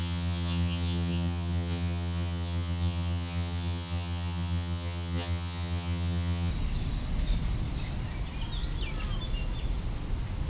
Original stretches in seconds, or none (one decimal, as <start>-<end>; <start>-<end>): 6.5-10.5